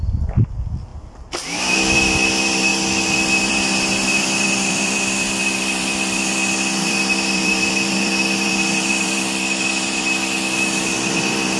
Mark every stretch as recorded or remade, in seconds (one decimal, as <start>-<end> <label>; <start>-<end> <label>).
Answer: 0.0-11.6 remade